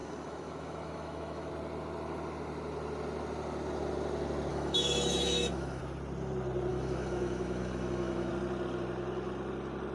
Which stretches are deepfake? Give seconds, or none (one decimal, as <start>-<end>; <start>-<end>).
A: 0.0-1.5; 4.5-5.8; 6.7-8.3